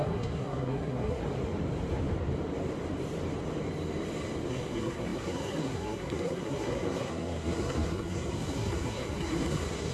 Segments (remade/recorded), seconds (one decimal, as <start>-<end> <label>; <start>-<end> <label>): 0.0-1.2 remade; 1.2-4.5 recorded; 4.5-9.9 remade